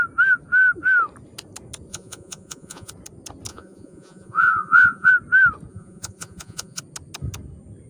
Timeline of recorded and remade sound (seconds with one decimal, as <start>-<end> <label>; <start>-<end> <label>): 0.0-1.9 recorded; 1.9-2.9 remade; 2.9-3.5 recorded; 3.5-5.1 remade; 5.1-5.7 recorded; 5.7-6.8 remade; 6.8-7.9 recorded